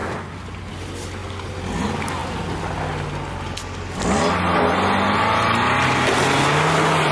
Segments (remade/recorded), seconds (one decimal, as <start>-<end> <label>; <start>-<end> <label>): 0.0-7.1 recorded